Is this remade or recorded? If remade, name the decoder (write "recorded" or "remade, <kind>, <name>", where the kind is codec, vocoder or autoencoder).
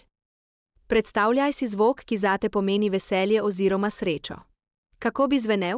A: recorded